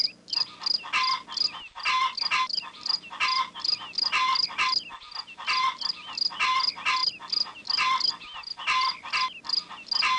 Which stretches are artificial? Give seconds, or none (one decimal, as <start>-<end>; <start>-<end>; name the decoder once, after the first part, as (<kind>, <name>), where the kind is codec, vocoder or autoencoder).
none